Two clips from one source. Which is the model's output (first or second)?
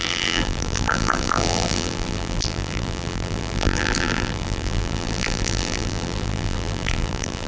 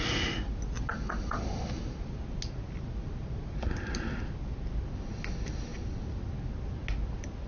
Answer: first